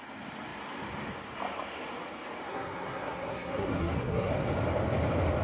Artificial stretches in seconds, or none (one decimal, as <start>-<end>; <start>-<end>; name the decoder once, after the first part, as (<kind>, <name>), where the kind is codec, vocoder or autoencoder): 2.5-4.3 (codec, SNAC)